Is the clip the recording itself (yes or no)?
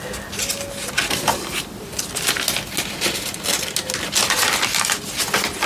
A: yes